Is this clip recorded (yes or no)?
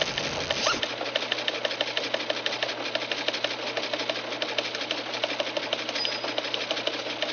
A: yes